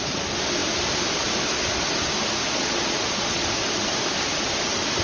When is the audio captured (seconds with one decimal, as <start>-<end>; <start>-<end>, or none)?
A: 0.0-2.4; 3.5-5.0